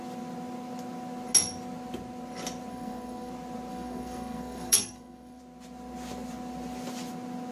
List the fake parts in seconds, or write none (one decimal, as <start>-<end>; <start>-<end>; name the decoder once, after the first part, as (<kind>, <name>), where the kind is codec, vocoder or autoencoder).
2.7-3.3 (codec, SNAC); 3.7-5.4